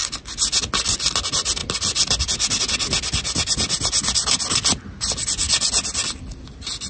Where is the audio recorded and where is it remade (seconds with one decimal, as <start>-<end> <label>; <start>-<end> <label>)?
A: 0.0-6.9 recorded